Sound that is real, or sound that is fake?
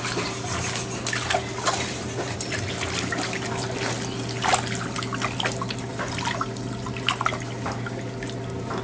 real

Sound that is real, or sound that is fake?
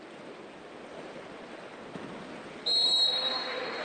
real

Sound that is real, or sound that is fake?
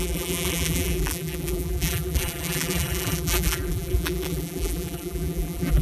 fake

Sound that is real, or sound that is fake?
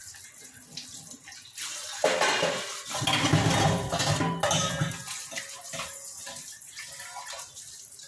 real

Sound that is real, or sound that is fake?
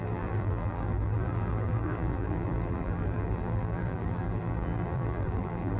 fake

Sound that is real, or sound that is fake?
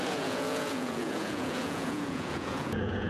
fake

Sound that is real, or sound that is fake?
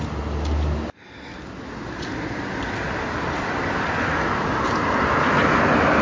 real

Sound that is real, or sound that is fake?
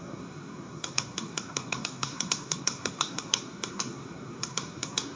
fake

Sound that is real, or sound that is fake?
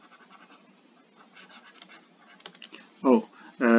real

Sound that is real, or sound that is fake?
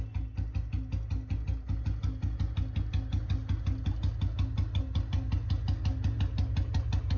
real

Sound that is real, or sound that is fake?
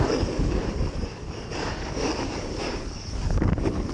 fake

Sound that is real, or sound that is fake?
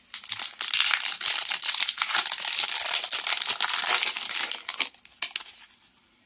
real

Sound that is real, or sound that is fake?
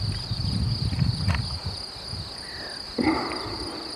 real